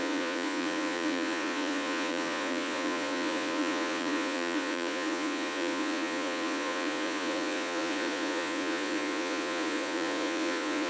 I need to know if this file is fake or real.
fake